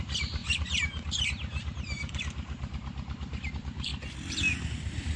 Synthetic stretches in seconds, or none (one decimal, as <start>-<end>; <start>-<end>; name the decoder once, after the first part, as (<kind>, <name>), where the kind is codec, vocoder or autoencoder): 0.0-3.9 (vocoder, BigVGAN v2); 4.7-5.2